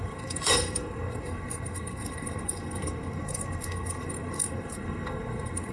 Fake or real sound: fake